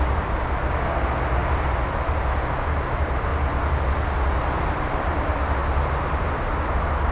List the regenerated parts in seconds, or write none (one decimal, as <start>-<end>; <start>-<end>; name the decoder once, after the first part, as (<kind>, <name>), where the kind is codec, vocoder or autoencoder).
none